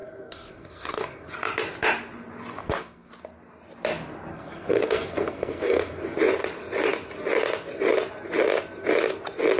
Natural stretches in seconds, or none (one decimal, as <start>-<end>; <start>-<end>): 1.3-2.6; 3.1-4.3; 6.0-9.6